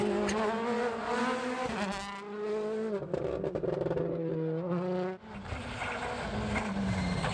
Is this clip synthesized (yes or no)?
no